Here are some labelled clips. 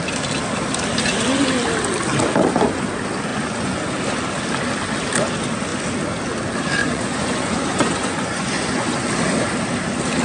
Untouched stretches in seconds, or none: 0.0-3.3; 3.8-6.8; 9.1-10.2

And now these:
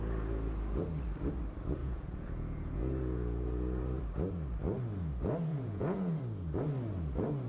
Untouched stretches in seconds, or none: 0.0-1.8; 3.8-5.5; 6.2-7.5

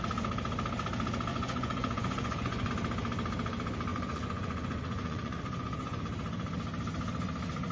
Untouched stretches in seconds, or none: 0.0-1.3; 2.7-3.9; 6.0-7.7

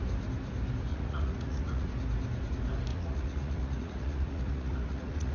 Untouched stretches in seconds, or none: 0.0-0.9; 1.9-2.9

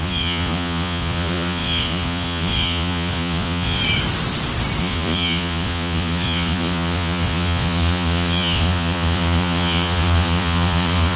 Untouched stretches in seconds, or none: 3.8-4.8

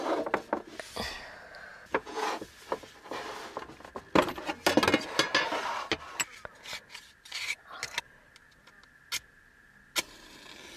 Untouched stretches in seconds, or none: 0.0-1.7; 2.4-10.8

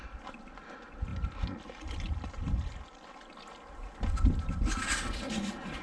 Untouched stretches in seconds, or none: 0.0-5.8